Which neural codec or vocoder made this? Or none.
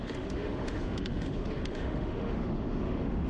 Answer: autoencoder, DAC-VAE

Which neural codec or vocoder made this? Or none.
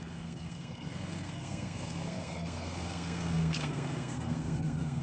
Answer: codec, SNAC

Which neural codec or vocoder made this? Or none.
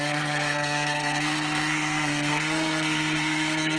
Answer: codec, SNAC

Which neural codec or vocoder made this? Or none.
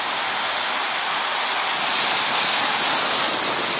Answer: none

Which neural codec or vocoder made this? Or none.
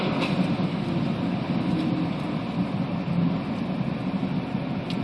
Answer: none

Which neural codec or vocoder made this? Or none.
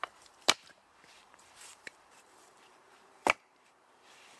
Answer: vocoder, BigVGAN v2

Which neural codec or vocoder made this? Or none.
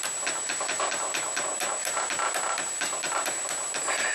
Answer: none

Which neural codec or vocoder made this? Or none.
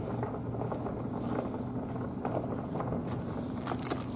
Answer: none